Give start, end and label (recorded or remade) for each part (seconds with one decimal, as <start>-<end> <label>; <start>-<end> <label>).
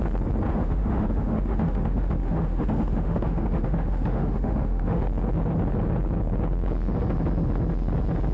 0.0-0.5 recorded; 0.5-5.0 remade; 5.0-8.3 recorded